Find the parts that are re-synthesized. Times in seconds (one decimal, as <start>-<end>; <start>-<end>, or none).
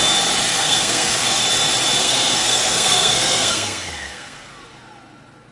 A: 0.5-1.4; 2.0-4.5